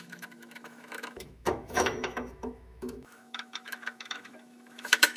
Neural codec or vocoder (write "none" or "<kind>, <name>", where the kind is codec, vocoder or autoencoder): autoencoder, DAC-VAE